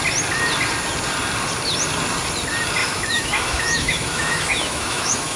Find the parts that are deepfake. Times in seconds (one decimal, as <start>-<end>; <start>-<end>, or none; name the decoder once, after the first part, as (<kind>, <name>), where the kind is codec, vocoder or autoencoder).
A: 2.8-5.4 (autoencoder, DAC-VAE)